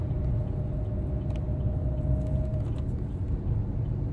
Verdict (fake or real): real